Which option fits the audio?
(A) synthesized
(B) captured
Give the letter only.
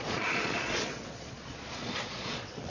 A